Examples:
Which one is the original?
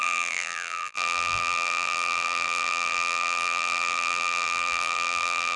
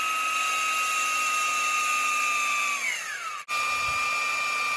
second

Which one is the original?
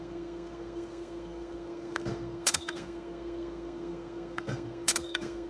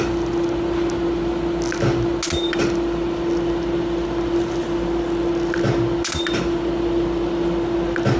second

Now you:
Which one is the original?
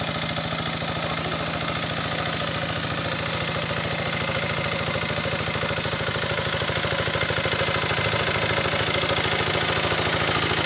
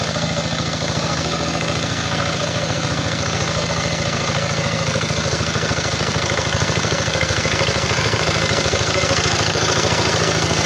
first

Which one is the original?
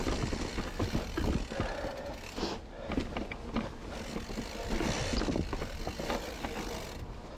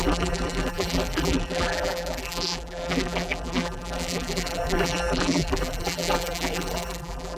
first